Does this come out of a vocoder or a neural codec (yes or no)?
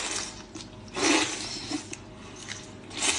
no